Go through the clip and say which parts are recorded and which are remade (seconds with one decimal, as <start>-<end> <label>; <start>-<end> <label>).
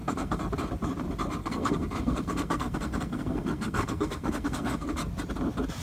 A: 0.0-0.5 remade; 0.5-1.4 recorded; 1.4-4.9 remade; 4.9-5.8 recorded